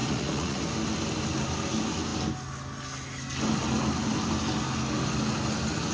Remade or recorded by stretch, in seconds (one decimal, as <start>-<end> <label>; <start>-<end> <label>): 0.0-0.6 remade; 0.6-5.9 recorded